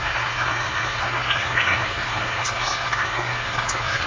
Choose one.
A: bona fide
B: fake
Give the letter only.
B